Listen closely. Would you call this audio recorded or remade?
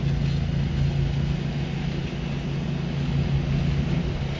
recorded